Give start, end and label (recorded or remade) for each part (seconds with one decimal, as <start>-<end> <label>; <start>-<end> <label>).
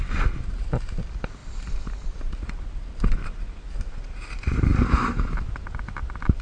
0.0-6.4 recorded